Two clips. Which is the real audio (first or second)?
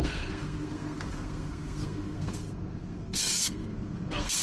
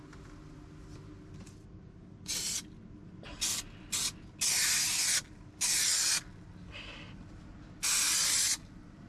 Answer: second